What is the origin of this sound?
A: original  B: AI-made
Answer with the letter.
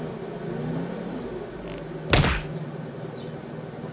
A